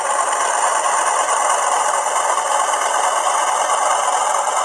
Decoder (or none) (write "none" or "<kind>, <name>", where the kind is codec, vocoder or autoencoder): none